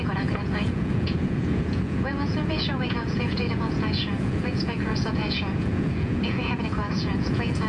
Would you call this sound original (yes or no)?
no